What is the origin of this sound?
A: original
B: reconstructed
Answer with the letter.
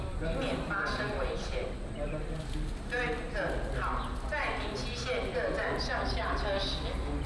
A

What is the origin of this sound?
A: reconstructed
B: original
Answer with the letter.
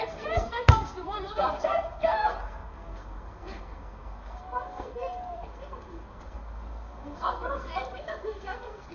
A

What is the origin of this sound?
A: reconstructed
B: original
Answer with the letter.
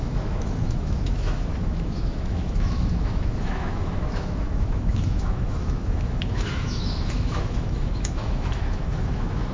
A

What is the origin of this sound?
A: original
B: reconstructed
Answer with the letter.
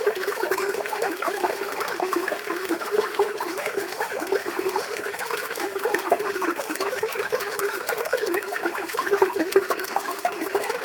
B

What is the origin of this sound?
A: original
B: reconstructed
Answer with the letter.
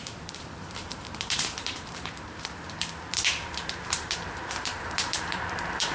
B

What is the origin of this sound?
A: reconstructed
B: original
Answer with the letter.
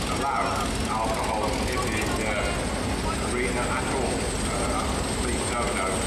B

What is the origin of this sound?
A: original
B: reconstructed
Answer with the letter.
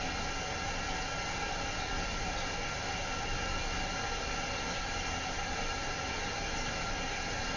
A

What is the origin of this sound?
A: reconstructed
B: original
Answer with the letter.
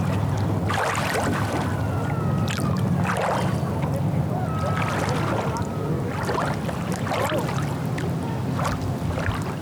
B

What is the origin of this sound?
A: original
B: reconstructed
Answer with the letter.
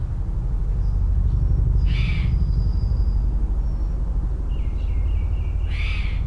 A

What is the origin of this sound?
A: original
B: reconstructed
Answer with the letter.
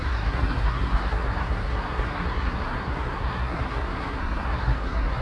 B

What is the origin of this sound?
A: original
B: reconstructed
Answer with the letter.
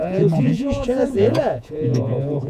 B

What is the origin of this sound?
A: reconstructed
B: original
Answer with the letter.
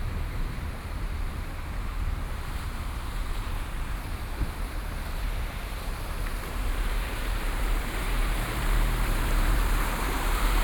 A